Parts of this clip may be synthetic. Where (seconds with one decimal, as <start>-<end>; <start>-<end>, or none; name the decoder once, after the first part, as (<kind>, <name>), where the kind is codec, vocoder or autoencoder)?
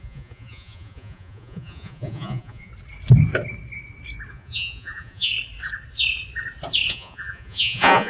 0.0-2.7 (vocoder, Vocos); 4.3-5.3; 6.9-8.1